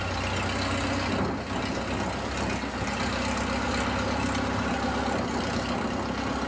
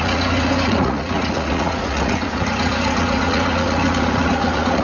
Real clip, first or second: first